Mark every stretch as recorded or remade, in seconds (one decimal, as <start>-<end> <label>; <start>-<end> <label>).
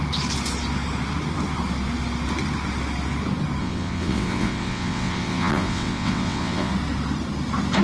0.0-3.6 recorded; 3.6-6.7 remade; 6.7-7.8 recorded